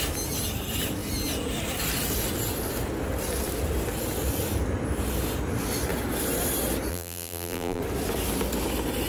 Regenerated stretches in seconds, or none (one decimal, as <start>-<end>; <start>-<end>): 6.9-7.8